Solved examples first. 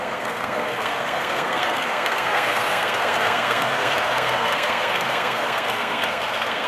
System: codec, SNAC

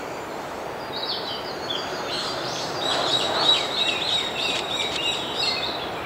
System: vocoder, BigVGAN v2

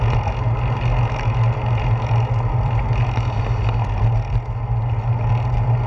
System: none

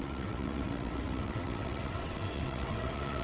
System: vocoder, WaveNeXt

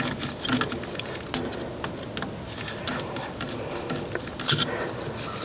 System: none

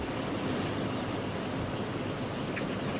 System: none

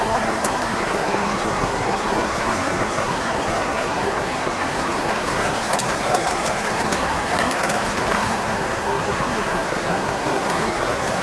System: codec, SNAC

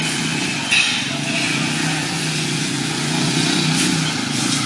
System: vocoder, Vocos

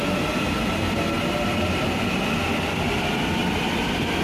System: none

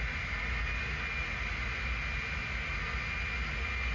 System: none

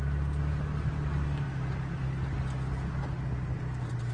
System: none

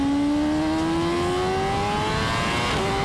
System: none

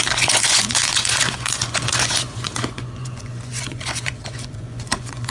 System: vocoder, Vocos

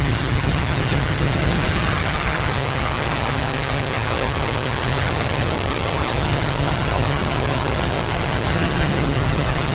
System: vocoder, HiFi-GAN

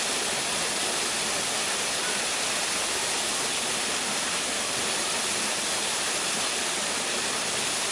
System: none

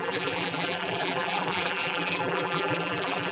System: vocoder, BigVGAN v2